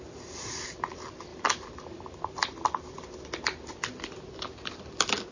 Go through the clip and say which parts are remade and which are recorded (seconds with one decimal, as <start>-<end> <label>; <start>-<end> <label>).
0.0-5.3 recorded